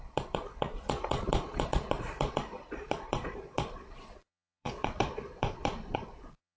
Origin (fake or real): fake